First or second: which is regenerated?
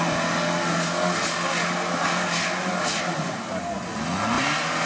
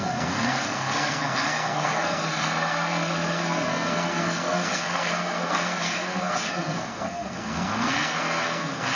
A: second